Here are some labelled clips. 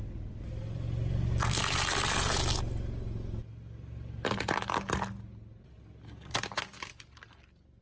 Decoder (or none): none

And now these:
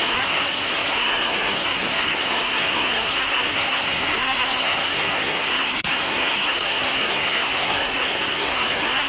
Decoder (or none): codec, SNAC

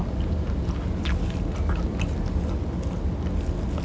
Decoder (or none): none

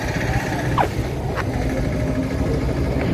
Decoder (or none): none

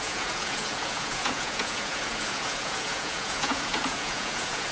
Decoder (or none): vocoder, Vocos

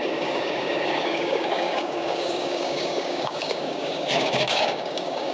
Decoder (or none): codec, DAC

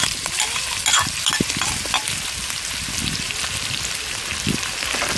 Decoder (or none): none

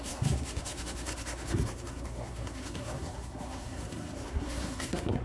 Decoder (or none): codec, SNAC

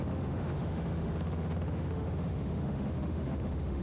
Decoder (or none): autoencoder, DAC-VAE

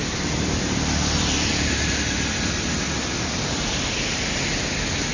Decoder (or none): none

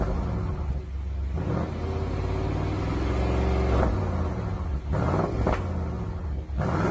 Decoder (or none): none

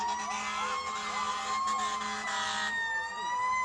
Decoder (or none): none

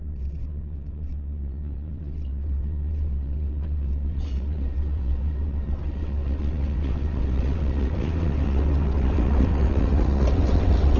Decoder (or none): vocoder, WaveNeXt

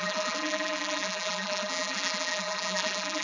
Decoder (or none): vocoder, BigVGAN v2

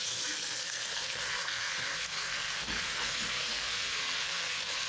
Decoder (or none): codec, SNAC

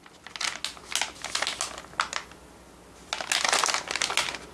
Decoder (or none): none